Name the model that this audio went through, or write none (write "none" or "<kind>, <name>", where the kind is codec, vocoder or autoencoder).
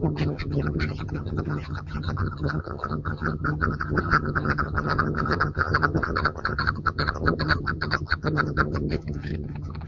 vocoder, HiFi-GAN